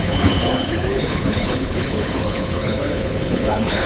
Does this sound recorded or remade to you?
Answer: remade